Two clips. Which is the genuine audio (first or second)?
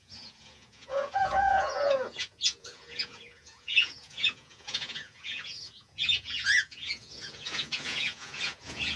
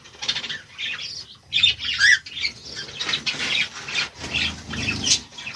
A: second